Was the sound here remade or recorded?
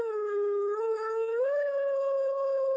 remade